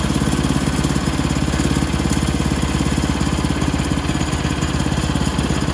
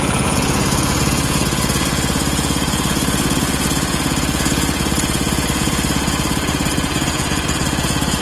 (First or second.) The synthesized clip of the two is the second